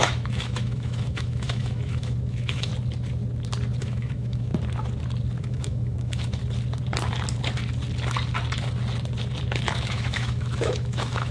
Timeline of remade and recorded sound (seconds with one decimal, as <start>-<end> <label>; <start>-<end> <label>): 0.0-2.7 remade; 2.7-3.8 recorded; 3.8-4.5 remade; 4.5-5.4 recorded; 5.4-6.4 remade; 6.4-9.7 recorded; 9.7-11.3 remade

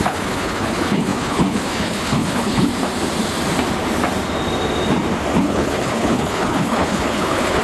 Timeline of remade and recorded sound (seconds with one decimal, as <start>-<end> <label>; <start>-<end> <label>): 0.0-2.7 remade; 2.7-5.4 recorded; 5.4-7.6 remade